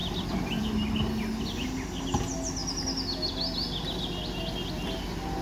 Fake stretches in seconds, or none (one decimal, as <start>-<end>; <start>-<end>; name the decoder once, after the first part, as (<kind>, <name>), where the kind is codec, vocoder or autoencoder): 0.0-0.6 (vocoder, BigVGAN v2)